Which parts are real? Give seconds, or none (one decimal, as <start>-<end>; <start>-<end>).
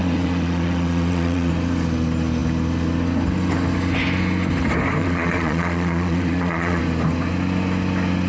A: 1.5-5.0; 6.8-8.3